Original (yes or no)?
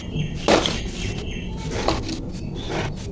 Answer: yes